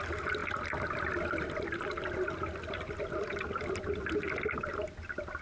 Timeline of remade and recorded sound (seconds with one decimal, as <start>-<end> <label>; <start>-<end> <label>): 0.0-5.4 recorded